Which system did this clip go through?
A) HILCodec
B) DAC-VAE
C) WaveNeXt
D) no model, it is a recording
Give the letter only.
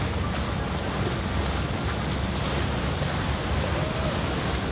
D